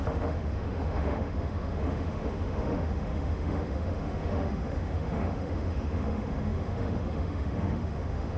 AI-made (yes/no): yes